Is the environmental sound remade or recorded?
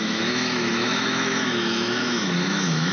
remade